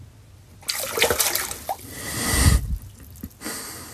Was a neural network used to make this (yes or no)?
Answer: no